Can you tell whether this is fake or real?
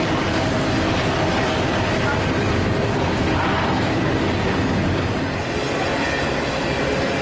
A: real